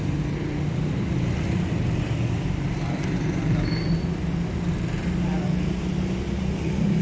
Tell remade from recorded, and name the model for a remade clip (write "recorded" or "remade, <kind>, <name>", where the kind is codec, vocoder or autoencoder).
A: recorded